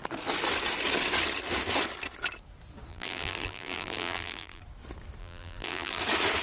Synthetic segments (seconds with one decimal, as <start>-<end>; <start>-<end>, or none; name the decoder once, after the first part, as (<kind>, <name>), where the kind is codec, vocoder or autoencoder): 2.9-4.6 (vocoder, BigVGAN v2); 5.2-6.0